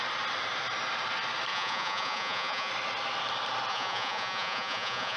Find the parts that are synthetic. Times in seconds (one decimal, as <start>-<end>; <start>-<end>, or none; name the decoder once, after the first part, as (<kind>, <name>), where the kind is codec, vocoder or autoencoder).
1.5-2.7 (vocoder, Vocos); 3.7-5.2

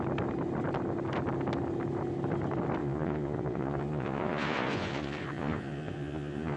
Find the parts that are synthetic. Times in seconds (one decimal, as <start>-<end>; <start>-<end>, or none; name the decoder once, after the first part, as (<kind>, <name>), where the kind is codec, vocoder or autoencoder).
2.8-6.6 (vocoder, Vocos)

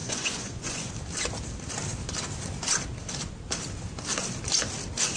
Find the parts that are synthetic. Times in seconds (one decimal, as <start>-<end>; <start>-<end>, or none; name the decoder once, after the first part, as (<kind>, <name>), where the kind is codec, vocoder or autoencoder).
0.0-0.9 (vocoder, Vocos)